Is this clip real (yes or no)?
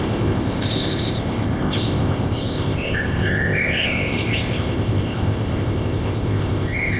no